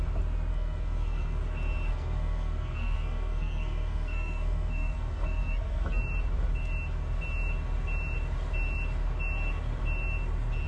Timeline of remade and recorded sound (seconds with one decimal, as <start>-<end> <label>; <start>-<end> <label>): 0.0-0.5 recorded; 0.5-1.4 remade; 1.4-1.9 recorded; 1.9-6.0 remade; 6.0-10.7 recorded